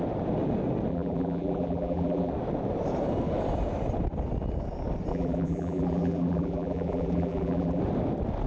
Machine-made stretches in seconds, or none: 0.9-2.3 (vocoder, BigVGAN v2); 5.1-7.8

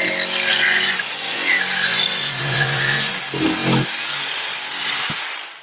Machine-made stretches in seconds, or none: 0.5-1.5 (vocoder, Vocos); 1.9-3.2

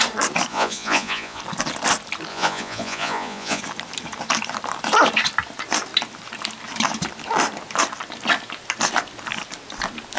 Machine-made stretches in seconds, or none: 0.5-1.4 (vocoder, Vocos); 2.3-3.6

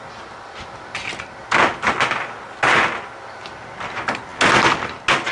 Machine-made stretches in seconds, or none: none

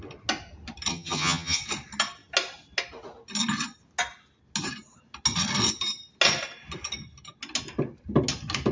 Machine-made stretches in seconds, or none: 0.9-1.6 (vocoder, HiFi-GAN)

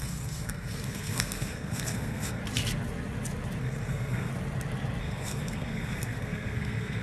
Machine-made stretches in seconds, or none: 0.0-2.4 (codec, SNAC); 3.6-4.3; 5.0-7.0